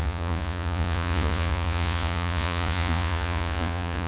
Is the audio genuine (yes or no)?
no